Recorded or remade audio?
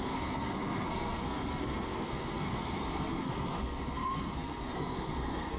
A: remade